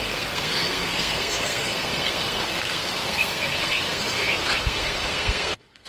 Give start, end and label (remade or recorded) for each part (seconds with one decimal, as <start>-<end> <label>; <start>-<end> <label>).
0.0-5.9 remade